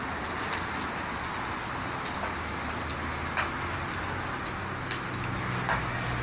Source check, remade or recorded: recorded